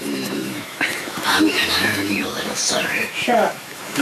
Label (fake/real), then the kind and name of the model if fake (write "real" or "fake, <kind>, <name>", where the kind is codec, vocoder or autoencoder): fake, autoencoder, DAC-VAE